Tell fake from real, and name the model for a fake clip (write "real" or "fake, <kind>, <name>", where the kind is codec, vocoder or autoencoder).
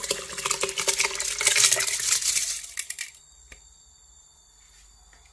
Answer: real